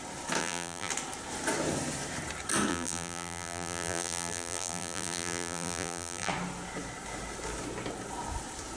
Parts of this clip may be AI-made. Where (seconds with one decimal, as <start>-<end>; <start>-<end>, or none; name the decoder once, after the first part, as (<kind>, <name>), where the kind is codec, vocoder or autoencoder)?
0.4-0.9 (vocoder, BigVGAN v2); 2.7-6.3